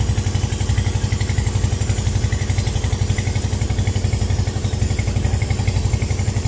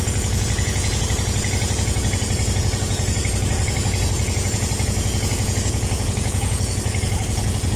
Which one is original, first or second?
first